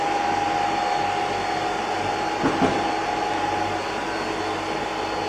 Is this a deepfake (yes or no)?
no